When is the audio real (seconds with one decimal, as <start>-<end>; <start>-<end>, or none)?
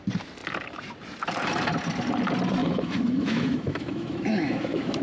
0.0-2.6